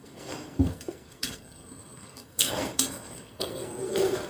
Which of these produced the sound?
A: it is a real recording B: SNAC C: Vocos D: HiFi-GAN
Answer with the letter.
B